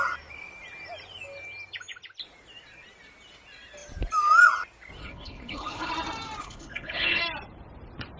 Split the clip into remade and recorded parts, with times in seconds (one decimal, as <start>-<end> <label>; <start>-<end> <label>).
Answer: 0.0-5.0 recorded; 5.0-5.9 remade; 5.9-6.4 recorded; 6.4-7.2 remade; 7.2-8.2 recorded